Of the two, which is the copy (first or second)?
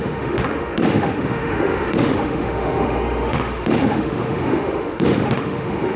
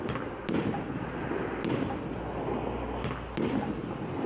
first